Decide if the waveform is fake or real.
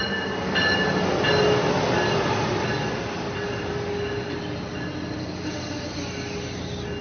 real